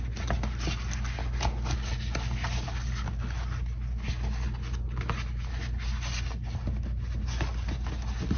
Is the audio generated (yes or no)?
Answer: no